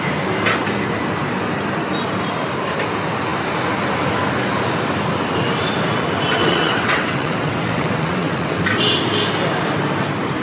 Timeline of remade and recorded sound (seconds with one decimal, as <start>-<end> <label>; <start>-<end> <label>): 0.0-6.4 recorded; 6.4-8.6 remade; 8.6-10.4 recorded